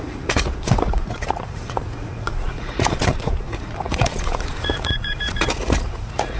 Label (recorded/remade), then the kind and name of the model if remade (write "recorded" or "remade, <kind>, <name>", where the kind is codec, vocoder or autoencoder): remade, vocoder, Vocos